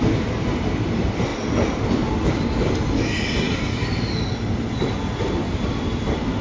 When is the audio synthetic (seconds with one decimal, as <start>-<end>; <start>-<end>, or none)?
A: none

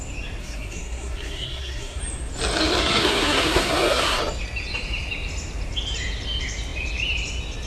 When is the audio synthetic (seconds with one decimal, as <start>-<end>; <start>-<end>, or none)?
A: 0.4-2.0; 2.8-4.2

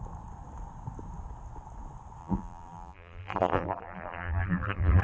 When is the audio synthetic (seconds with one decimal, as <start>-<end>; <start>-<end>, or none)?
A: 2.2-5.0

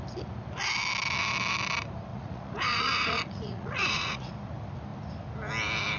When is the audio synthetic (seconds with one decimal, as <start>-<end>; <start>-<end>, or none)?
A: 2.1-4.3

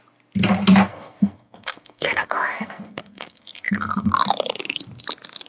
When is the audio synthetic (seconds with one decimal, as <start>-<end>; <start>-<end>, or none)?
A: 0.9-4.1

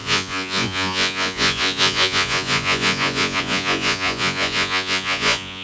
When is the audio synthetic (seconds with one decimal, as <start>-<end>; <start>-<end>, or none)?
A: 0.0-5.6

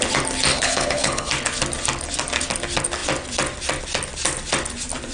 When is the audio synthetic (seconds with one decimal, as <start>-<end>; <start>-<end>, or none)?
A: 0.5-1.3

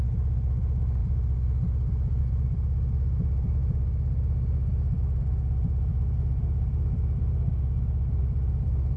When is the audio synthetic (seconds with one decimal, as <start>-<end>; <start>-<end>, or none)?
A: none